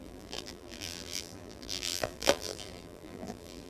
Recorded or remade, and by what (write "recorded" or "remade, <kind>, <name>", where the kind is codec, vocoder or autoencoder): remade, vocoder, BigVGAN v2